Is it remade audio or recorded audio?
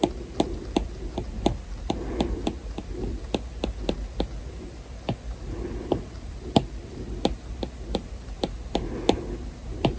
recorded